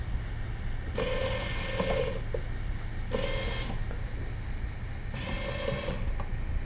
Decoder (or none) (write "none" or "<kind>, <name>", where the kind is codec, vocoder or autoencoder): none